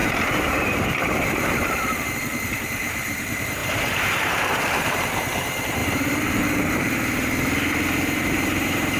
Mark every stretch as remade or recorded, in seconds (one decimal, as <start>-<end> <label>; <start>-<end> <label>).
0.0-0.6 recorded; 0.6-9.0 remade